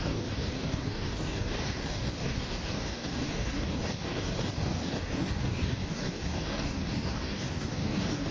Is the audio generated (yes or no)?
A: yes